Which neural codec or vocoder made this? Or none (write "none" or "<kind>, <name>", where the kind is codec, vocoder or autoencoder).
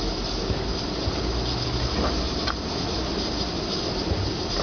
none